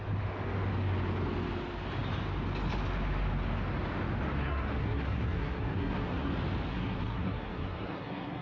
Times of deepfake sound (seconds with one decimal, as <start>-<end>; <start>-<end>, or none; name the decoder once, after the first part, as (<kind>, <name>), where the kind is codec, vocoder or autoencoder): 4.4-6.3 (codec, SNAC); 6.7-8.4